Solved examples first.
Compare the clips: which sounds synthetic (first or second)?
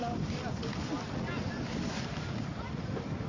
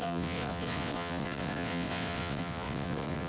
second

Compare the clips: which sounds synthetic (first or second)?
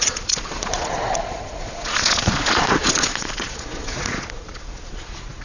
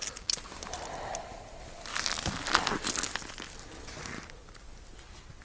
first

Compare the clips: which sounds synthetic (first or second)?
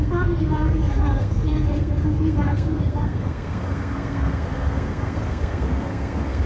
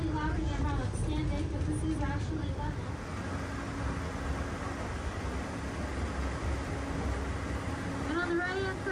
first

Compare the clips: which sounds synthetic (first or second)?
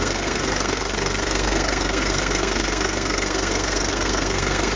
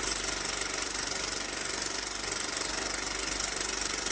first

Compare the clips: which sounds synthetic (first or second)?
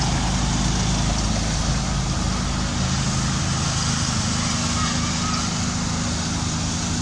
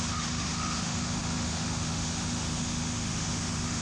second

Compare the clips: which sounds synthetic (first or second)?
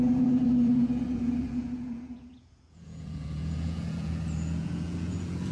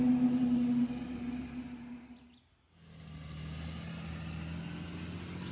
first